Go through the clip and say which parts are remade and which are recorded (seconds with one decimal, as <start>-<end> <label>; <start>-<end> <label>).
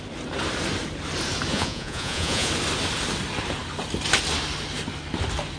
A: 0.0-1.5 recorded; 1.5-2.5 remade; 2.5-5.6 recorded